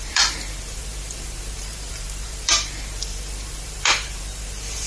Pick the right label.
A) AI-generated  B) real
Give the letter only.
A